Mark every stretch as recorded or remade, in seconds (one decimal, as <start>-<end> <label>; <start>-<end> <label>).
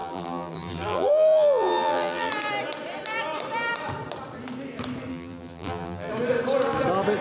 0.0-2.3 remade; 2.3-5.1 recorded; 5.1-6.1 remade; 6.1-7.2 recorded